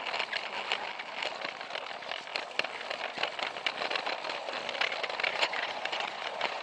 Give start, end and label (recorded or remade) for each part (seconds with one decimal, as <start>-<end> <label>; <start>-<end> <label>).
0.0-5.3 recorded; 5.3-6.6 remade